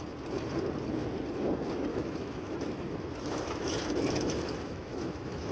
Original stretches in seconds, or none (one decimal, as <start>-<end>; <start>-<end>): 0.0-1.9